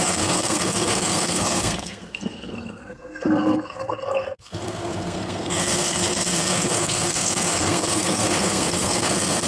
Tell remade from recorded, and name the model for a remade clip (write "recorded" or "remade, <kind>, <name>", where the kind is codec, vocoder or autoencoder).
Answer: remade, codec, SNAC